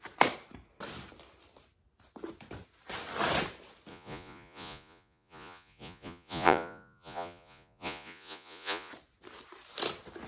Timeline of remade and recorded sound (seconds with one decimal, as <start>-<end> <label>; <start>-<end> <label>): 0.0-3.9 recorded; 3.9-8.9 remade; 8.9-10.3 recorded